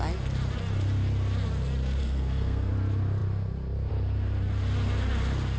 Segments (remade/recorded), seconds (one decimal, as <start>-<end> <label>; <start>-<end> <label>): 0.0-2.0 recorded; 2.0-2.7 remade; 2.7-5.6 recorded